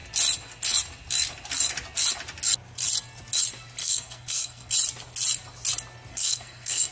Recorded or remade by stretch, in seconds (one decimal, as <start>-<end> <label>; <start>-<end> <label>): 0.0-3.8 recorded; 3.8-4.7 remade; 4.7-6.1 recorded; 6.1-6.9 remade